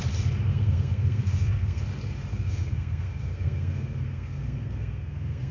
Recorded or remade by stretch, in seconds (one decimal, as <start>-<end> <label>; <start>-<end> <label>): 0.0-0.5 recorded; 0.5-1.8 remade; 1.8-2.3 recorded; 2.3-5.5 remade